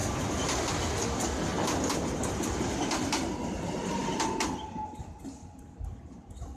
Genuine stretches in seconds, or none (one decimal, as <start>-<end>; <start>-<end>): 0.7-1.5; 3.1-6.6